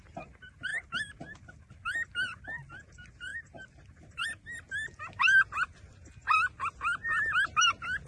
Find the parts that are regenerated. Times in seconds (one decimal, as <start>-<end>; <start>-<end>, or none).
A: none